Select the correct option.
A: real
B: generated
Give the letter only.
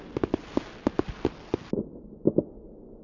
A